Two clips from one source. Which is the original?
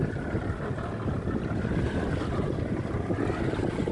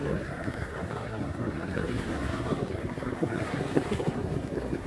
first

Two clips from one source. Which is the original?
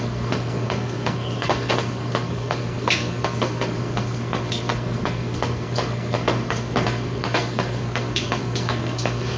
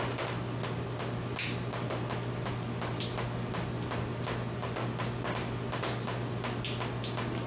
second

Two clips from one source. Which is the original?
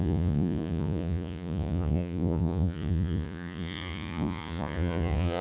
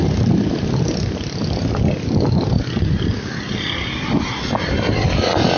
second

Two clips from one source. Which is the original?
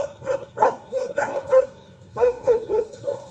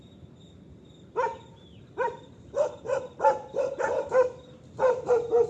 second